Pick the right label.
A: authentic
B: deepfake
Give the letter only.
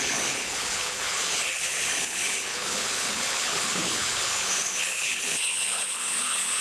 B